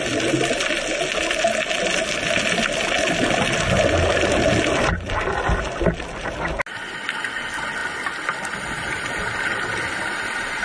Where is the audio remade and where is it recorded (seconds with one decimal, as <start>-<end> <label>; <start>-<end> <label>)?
0.0-10.6 recorded